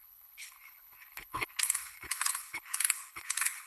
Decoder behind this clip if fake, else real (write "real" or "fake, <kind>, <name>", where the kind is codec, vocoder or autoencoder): fake, codec, HILCodec